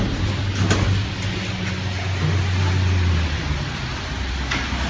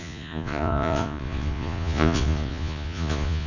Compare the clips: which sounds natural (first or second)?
first